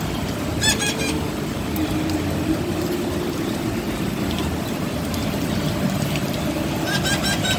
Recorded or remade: recorded